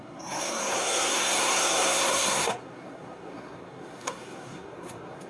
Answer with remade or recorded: remade